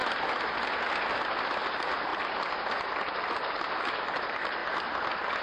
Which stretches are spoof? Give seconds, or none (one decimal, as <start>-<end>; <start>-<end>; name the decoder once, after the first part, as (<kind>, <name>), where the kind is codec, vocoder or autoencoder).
2.1-3.7 (vocoder, BigVGAN v2)